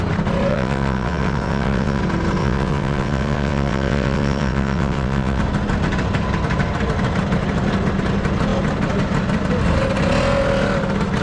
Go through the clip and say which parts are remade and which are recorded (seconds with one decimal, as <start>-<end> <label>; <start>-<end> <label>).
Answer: 0.0-0.5 recorded; 0.5-2.0 remade; 2.0-2.4 recorded; 2.4-5.4 remade; 5.4-11.2 recorded